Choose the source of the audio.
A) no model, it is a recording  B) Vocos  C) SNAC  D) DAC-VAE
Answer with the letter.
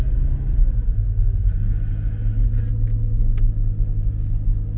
A